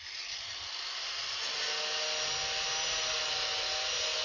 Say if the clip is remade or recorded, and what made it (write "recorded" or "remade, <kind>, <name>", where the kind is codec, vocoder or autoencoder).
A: recorded